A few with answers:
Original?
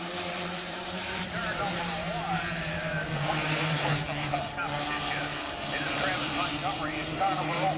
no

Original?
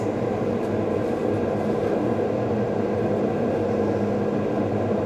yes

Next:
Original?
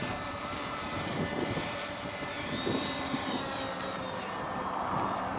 no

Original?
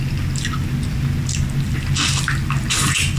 yes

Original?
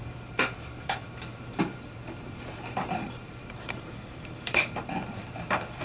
no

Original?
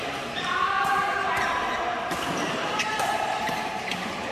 no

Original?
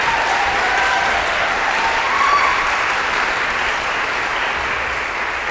no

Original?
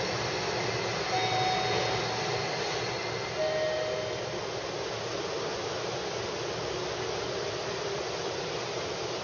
yes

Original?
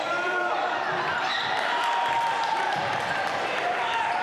no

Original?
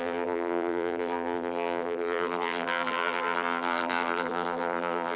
no